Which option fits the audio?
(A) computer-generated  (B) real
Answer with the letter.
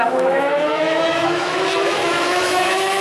A